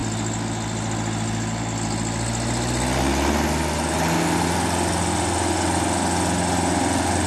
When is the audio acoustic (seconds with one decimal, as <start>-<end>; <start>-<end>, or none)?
0.0-7.3